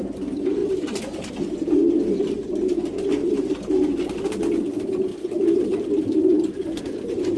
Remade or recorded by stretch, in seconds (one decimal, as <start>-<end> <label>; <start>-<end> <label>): 0.0-0.6 recorded; 0.6-1.3 remade; 1.3-3.2 recorded; 3.2-4.3 remade; 4.3-5.1 recorded; 5.1-6.8 remade; 6.8-7.4 recorded